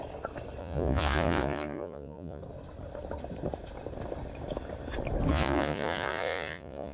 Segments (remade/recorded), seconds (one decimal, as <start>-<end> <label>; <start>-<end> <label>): 0.0-0.6 recorded; 0.6-2.4 remade; 2.4-5.3 recorded; 5.3-6.9 remade